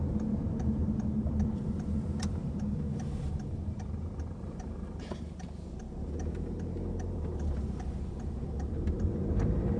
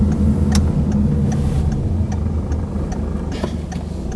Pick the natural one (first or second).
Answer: second